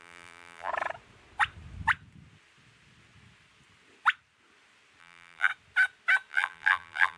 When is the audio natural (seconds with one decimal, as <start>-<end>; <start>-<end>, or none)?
0.7-5.0; 5.5-6.3